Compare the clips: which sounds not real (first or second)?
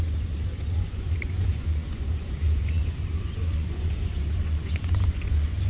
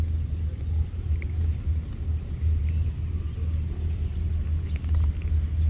first